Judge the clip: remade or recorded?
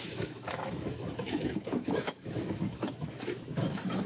remade